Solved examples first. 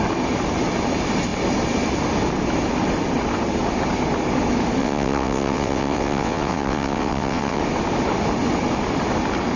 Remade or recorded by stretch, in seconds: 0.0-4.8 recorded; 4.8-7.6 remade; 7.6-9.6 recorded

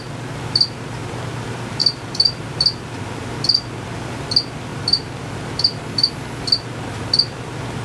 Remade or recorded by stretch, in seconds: 0.0-1.8 recorded; 1.8-2.8 remade; 2.8-4.7 recorded; 4.7-6.1 remade; 6.1-7.8 recorded

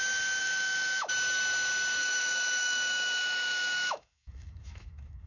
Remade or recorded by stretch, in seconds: 0.0-0.4 recorded; 0.4-1.1 remade; 1.1-2.0 recorded; 2.0-5.3 remade